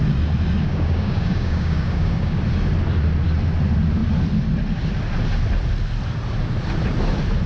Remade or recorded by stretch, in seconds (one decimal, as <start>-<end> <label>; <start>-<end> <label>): 0.0-0.6 recorded; 0.6-2.4 remade; 2.4-7.5 recorded